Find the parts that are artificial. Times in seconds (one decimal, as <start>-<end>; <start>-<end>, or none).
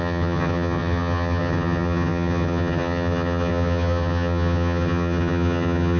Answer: 0.0-6.0